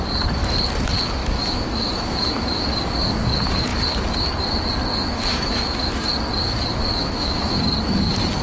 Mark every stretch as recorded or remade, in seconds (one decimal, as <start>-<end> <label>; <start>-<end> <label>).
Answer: 0.0-1.2 recorded; 1.2-2.6 remade; 2.6-4.9 recorded; 4.9-5.9 remade; 5.9-6.9 recorded; 6.9-7.6 remade; 7.6-8.4 recorded